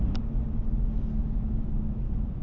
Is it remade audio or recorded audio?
recorded